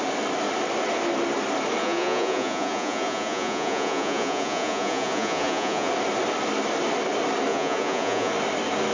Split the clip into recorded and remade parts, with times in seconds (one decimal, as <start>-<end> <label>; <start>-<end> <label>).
0.0-1.8 recorded; 1.8-5.9 remade; 5.9-7.5 recorded; 7.5-8.3 remade; 8.3-8.9 recorded